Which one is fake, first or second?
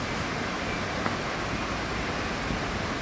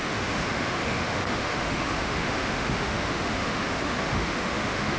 second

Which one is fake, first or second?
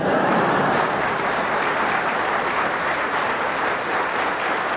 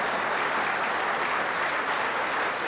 first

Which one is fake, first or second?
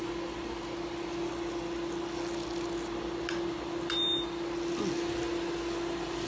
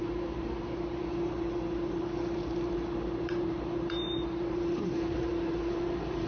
second